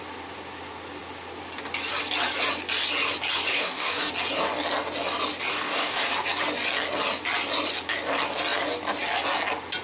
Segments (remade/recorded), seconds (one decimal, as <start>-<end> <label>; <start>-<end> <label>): 0.0-3.5 recorded; 3.5-4.1 remade; 4.1-5.5 recorded; 5.5-6.1 remade; 6.1-9.8 recorded